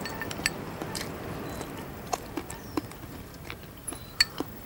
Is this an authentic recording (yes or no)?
no